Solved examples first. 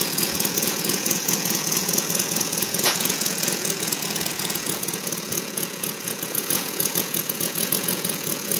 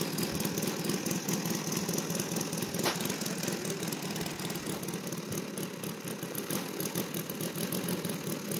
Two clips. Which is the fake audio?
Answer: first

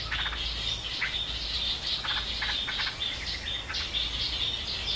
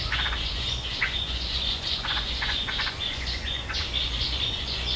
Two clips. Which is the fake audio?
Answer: second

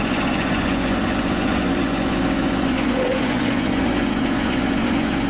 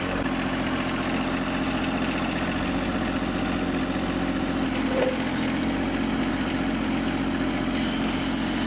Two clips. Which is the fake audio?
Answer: first